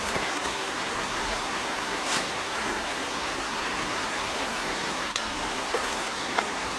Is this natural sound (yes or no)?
no